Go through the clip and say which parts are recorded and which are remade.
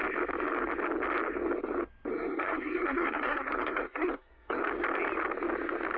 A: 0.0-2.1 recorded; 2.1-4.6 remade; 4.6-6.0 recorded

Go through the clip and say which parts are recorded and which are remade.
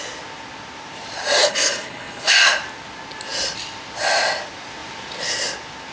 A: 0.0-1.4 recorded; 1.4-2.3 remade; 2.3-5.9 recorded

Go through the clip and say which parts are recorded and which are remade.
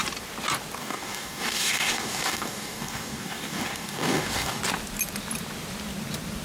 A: 0.0-0.8 recorded; 0.8-4.6 remade; 4.6-6.4 recorded